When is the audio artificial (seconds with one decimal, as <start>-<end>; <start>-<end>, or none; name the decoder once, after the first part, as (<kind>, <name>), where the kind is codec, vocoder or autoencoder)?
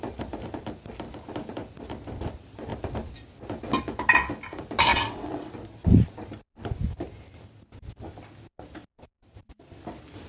4.9-5.5 (vocoder, WaveNeXt)